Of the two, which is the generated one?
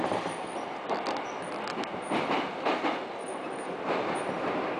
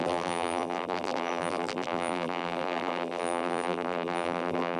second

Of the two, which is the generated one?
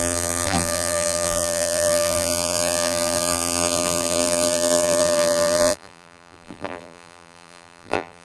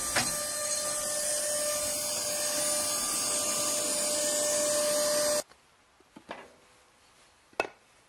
first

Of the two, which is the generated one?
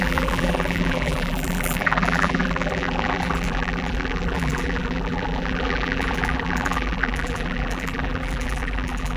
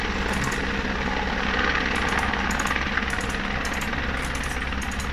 first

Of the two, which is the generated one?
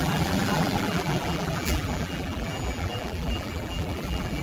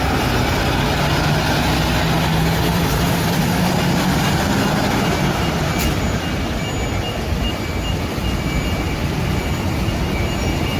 first